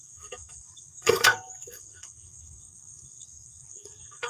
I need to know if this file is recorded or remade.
remade